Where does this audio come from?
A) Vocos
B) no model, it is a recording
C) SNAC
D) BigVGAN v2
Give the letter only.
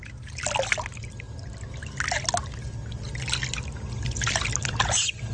B